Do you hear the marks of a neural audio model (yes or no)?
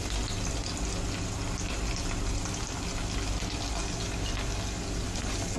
no